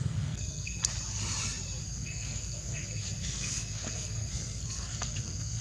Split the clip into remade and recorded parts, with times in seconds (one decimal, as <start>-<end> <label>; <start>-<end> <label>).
0.0-0.8 remade; 0.8-1.8 recorded; 1.8-5.6 remade